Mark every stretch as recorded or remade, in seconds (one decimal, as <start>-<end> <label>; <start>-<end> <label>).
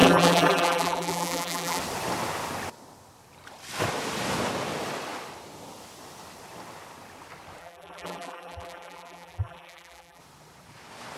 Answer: 0.0-1.8 remade; 1.8-7.6 recorded; 7.6-10.2 remade; 10.2-11.2 recorded